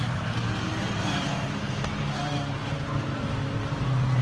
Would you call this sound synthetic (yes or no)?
yes